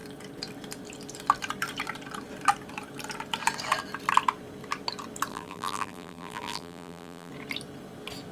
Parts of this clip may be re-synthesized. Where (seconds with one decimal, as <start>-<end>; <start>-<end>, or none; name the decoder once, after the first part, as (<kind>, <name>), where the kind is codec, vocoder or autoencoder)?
5.3-7.3 (vocoder, BigVGAN v2)